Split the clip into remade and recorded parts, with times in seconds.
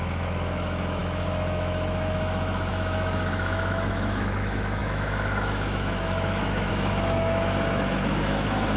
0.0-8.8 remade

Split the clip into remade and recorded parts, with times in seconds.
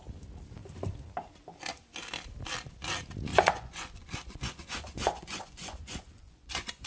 0.0-3.3 recorded; 3.3-6.9 remade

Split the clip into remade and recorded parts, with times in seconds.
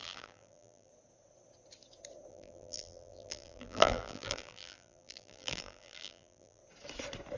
0.0-0.9 remade; 0.9-2.3 recorded; 2.3-6.6 remade; 6.6-7.4 recorded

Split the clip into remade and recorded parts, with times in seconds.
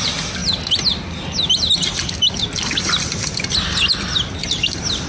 0.0-5.1 recorded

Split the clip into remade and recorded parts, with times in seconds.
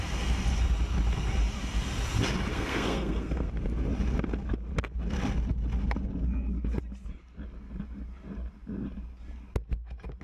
0.0-2.5 recorded; 2.5-3.5 remade; 3.5-10.2 recorded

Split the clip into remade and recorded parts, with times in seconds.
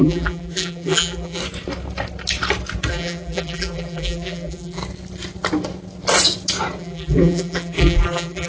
0.0-1.4 remade; 1.4-2.9 recorded; 2.9-4.8 remade; 4.8-6.8 recorded; 6.8-8.5 remade